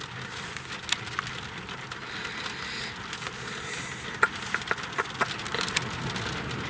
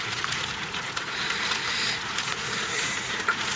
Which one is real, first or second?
first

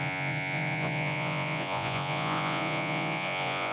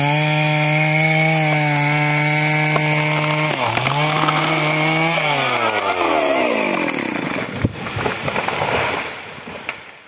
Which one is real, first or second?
second